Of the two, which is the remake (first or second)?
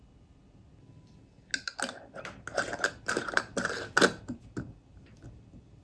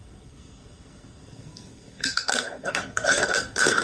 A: second